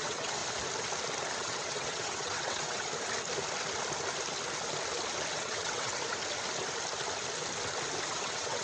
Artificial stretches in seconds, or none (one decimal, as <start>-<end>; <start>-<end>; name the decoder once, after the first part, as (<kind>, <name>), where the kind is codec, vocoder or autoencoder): 0.0-0.4 (vocoder, WaveNeXt); 1.4-2.9; 5.3-5.9; 8.1-8.6